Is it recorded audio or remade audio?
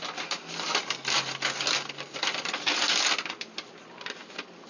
recorded